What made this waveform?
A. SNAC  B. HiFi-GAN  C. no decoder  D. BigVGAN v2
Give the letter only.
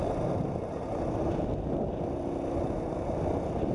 C